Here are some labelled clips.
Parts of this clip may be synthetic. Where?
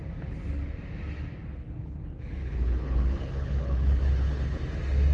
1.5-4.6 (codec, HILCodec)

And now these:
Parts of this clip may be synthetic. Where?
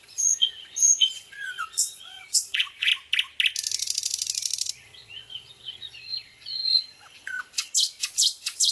0.0-2.9 (vocoder, Vocos); 4.7-8.7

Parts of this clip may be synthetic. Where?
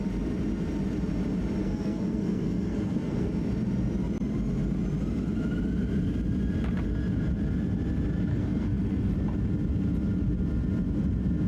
1.6-3.3 (codec, SNAC); 8.3-9.1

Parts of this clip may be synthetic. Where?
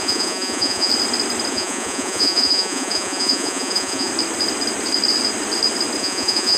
0.0-0.9 (vocoder, Vocos); 1.5-4.1; 6.0-6.6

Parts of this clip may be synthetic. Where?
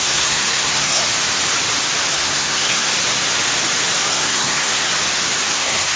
0.0-1.0 (codec, SNAC); 2.1-2.9; 4.1-4.9; 5.5-6.0